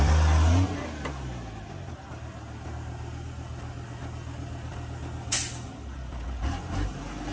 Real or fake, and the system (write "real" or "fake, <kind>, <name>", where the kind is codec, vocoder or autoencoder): real